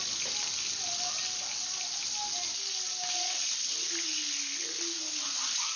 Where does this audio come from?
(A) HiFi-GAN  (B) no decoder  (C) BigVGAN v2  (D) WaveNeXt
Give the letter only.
B